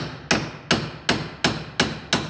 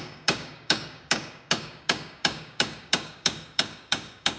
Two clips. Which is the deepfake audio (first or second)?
second